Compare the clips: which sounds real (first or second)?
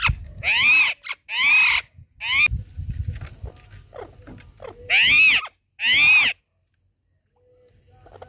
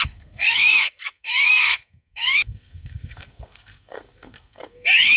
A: first